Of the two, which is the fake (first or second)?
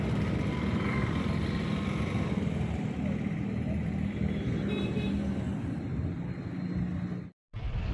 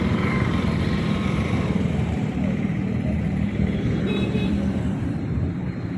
second